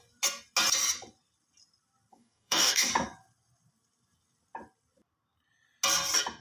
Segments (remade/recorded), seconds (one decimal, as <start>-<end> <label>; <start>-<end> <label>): 0.0-2.1 recorded; 2.1-2.9 remade; 2.9-6.4 recorded